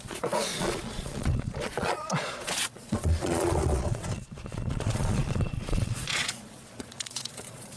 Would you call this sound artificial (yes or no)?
yes